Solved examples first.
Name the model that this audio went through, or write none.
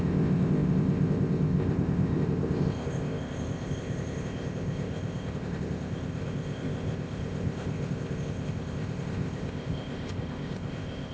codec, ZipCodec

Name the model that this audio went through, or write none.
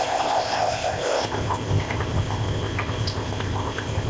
codec, ZipCodec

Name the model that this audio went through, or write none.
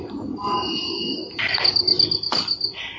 none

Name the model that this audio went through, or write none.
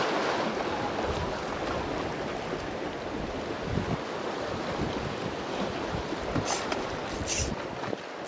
none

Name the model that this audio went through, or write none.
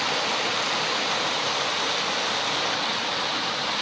none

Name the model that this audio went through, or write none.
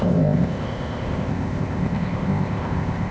codec, ZipCodec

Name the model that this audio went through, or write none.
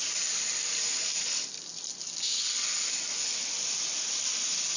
none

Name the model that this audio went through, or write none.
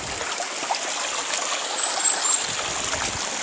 none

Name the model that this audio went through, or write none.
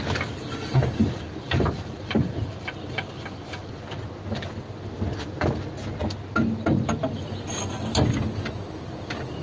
none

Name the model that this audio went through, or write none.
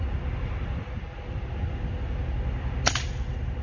none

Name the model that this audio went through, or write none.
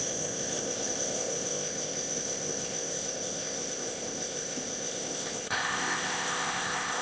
codec, ZipCodec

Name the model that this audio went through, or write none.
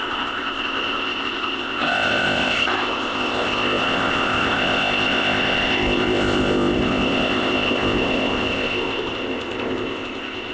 codec, ZipCodec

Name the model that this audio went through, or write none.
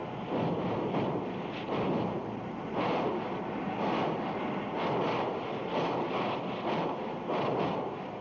none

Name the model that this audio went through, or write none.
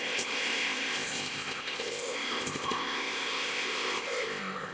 codec, ZipCodec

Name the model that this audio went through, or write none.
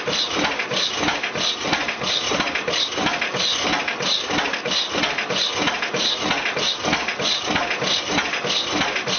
none